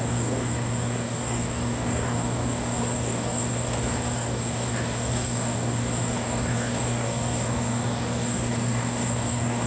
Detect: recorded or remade remade